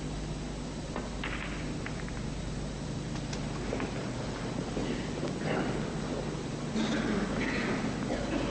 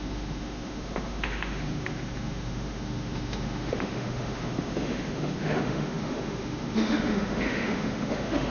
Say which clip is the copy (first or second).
second